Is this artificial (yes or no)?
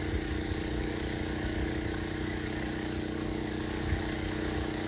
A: yes